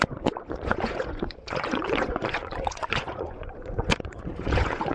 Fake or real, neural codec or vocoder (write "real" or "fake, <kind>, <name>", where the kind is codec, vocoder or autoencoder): fake, vocoder, Vocos